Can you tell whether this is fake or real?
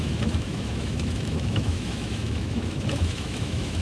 fake